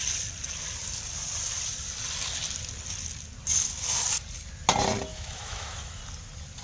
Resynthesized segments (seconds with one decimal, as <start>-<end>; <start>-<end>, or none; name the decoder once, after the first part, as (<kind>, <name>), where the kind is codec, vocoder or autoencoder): 5.1-6.0 (autoencoder, DAC-VAE)